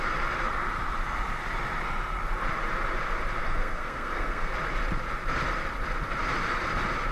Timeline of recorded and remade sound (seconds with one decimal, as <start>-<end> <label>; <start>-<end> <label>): 0.0-3.4 recorded; 3.4-4.5 remade; 4.5-7.1 recorded